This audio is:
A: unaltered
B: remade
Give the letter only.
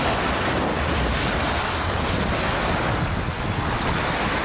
A